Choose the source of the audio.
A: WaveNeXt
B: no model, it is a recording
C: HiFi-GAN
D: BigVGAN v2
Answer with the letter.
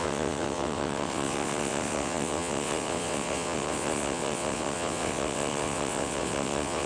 A